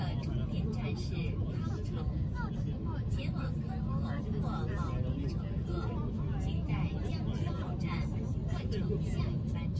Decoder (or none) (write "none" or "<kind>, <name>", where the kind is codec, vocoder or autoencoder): none